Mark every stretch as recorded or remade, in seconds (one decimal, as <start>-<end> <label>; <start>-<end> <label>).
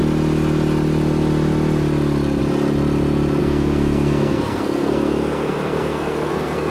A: 0.0-3.4 recorded; 3.4-6.7 remade